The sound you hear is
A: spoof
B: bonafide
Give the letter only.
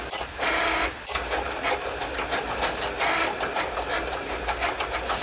B